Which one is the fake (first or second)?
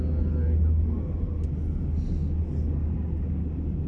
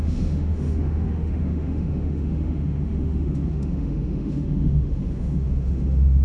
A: second